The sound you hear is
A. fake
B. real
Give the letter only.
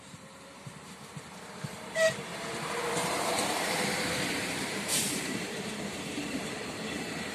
A